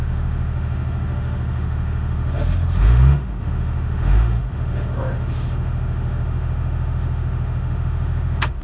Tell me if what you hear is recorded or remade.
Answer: remade